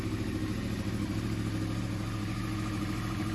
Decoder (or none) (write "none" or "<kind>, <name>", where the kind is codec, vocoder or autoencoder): none